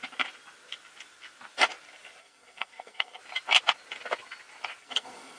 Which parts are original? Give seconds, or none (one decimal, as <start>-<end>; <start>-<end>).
0.0-2.2; 3.2-4.8